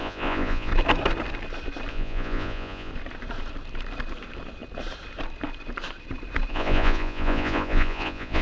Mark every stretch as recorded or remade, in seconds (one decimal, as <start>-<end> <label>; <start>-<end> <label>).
0.0-0.7 remade; 0.7-1.9 recorded; 1.9-2.9 remade; 2.9-6.5 recorded; 6.5-8.4 remade

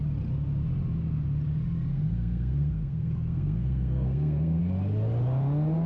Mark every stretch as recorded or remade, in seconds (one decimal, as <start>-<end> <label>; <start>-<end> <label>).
0.0-1.9 recorded; 1.9-4.6 remade; 4.6-5.9 recorded

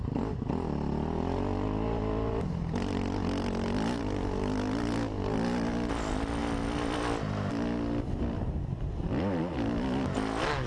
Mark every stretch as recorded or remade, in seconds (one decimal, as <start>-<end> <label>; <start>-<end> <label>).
0.0-10.7 recorded